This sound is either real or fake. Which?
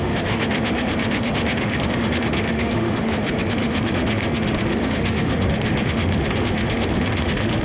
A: fake